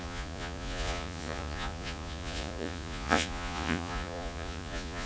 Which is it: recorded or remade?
remade